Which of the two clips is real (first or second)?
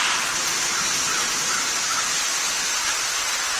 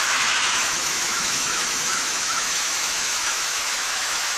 first